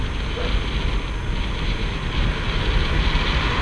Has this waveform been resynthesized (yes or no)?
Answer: no